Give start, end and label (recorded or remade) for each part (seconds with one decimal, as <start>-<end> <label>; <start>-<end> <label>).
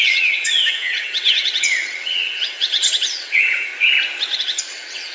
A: 0.0-3.7 remade; 3.7-4.4 recorded; 4.4-5.1 remade